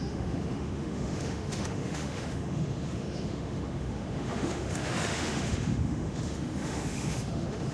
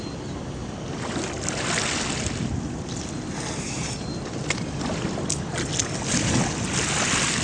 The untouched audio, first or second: second